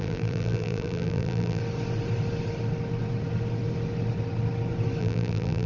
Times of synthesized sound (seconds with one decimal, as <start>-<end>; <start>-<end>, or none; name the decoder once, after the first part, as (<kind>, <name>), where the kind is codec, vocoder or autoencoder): 0.0-1.6 (vocoder, BigVGAN v2); 5.0-5.7